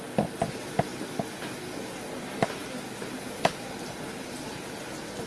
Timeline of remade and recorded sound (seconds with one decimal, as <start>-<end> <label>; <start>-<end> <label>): 0.0-5.3 recorded